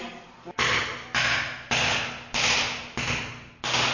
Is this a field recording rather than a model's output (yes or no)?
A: yes